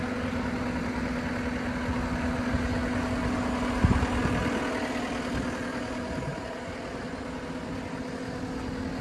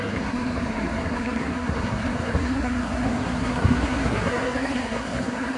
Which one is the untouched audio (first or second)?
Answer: first